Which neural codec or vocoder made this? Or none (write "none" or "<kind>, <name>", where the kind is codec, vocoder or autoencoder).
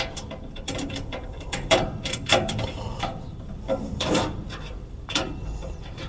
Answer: vocoder, BigVGAN v2